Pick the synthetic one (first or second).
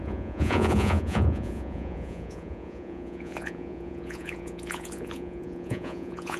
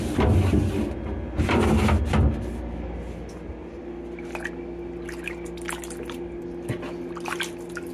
first